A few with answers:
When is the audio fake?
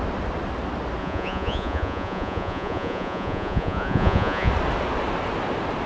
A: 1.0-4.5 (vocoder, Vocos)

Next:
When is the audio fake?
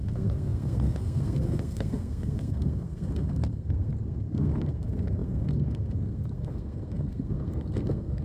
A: 0.0-8.2 (codec, SNAC)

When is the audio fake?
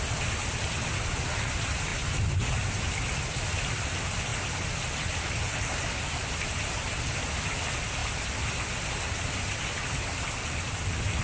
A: none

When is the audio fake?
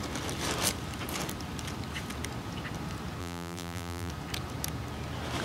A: 3.2-4.1 (vocoder, BigVGAN v2)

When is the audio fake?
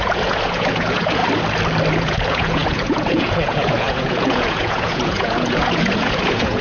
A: 0.0-1.2 (vocoder, Vocos); 1.9-6.6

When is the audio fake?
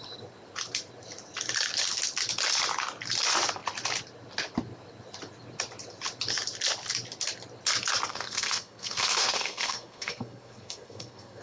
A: 8.1-11.4 (codec, SNAC)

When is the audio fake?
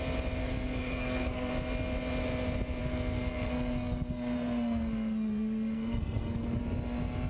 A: 0.4-1.5 (codec, SNAC); 2.8-6.6